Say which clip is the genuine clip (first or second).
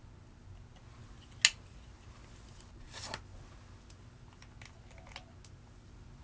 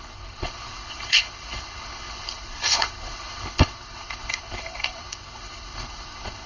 first